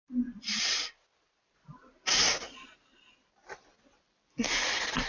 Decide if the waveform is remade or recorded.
recorded